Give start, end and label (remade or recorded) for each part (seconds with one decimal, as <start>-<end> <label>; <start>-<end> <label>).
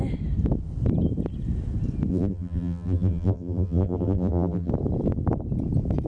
0.0-2.1 recorded; 2.1-4.7 remade; 4.7-6.1 recorded